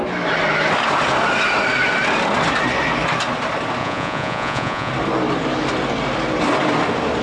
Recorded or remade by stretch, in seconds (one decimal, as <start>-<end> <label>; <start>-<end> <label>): 0.0-3.8 recorded; 3.8-4.9 remade; 4.9-7.2 recorded